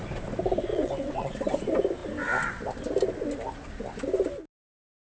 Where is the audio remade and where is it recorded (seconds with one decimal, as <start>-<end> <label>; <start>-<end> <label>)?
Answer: 0.0-0.7 recorded; 0.7-1.3 remade; 1.3-5.0 recorded